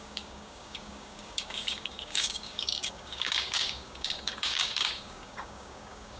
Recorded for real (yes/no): no